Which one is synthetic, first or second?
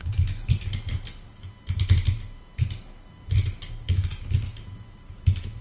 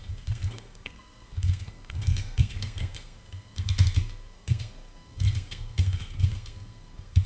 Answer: second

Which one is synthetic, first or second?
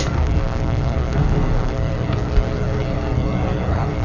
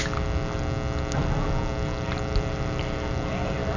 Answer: first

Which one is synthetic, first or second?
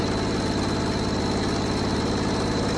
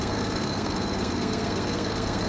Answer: second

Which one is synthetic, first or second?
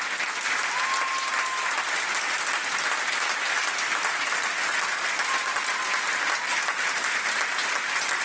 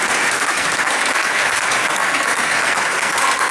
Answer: second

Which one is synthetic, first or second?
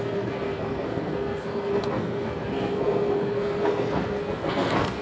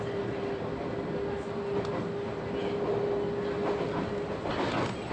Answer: first